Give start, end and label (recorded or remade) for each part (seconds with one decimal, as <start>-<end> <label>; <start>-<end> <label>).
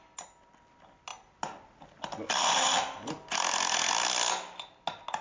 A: 0.0-5.2 recorded